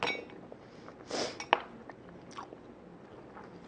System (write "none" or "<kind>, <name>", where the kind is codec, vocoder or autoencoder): none